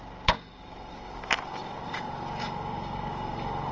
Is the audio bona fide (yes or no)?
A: no